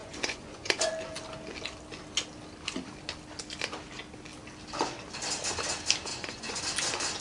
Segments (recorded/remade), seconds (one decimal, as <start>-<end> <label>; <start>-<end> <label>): 0.0-0.9 remade; 0.9-6.1 recorded; 6.1-6.6 remade; 6.6-7.2 recorded